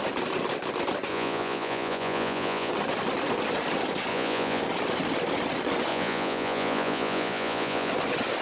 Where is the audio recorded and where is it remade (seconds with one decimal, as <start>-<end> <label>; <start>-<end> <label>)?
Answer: 0.0-1.1 recorded; 1.1-2.7 remade; 2.7-4.1 recorded; 4.1-4.6 remade; 4.6-5.9 recorded; 5.9-7.9 remade; 7.9-8.4 recorded